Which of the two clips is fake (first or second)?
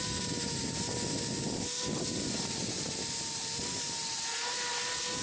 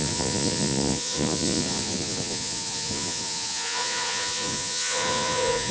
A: second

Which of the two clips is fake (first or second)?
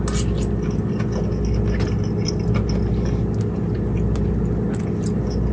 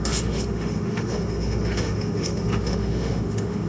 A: second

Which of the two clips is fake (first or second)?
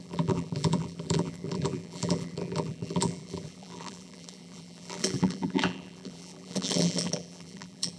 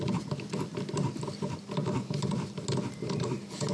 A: first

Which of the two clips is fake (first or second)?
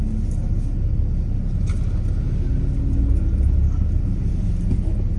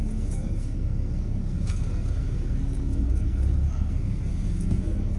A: second